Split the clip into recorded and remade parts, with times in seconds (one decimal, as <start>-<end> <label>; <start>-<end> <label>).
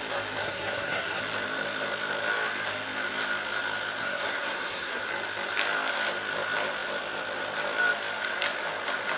0.0-0.4 recorded; 0.4-1.2 remade; 1.2-4.0 recorded; 4.0-5.0 remade; 5.0-9.2 recorded